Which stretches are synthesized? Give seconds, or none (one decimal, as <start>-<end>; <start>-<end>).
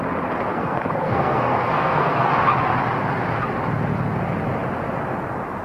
0.5-2.3